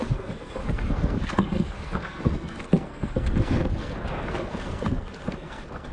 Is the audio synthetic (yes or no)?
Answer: yes